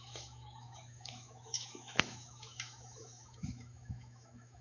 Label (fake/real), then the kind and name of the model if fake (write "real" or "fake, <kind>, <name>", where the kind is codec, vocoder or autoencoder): fake, autoencoder, DAC-VAE